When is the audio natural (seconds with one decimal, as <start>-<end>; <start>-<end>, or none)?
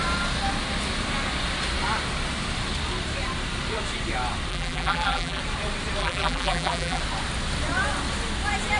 0.0-4.5; 5.4-6.0; 7.0-8.8